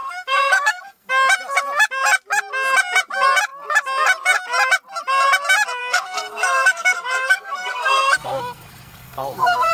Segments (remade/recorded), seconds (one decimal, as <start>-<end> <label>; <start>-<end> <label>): 0.0-1.1 remade; 1.1-5.8 recorded; 5.8-9.7 remade